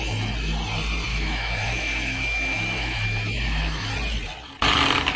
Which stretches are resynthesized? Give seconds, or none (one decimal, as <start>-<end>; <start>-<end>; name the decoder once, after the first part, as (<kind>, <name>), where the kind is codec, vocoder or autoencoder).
1.1-3.9 (autoencoder, DAC-VAE)